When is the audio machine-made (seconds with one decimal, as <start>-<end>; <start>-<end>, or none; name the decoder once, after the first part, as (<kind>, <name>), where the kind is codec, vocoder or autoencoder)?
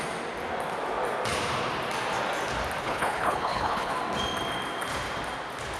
2.8-3.9 (codec, HILCodec)